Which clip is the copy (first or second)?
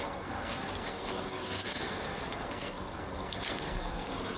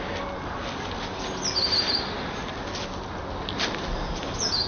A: first